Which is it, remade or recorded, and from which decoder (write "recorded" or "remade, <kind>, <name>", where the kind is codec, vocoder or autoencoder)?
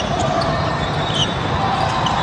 recorded